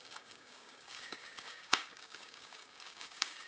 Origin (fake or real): fake